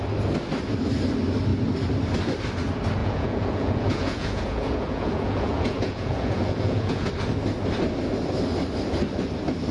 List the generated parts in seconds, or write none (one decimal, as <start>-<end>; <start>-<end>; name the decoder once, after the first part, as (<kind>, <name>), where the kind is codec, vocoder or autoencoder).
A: 3.0-7.1 (vocoder, Vocos)